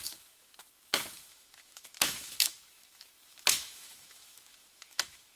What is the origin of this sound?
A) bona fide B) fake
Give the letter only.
B